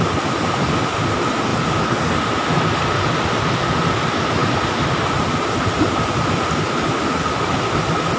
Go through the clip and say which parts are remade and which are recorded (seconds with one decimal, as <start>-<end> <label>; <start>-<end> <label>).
0.0-8.2 recorded